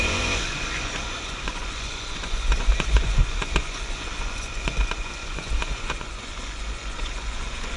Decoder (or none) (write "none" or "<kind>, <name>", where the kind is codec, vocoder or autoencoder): vocoder, Vocos